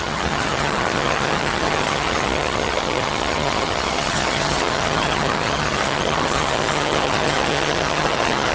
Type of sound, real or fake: fake